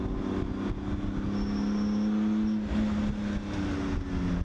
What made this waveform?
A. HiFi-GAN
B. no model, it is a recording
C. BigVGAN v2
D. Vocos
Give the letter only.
B